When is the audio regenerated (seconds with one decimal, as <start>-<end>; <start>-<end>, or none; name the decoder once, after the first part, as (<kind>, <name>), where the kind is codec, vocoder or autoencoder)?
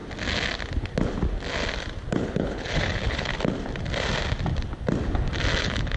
2.1-3.3 (codec, HILCodec); 5.6-6.0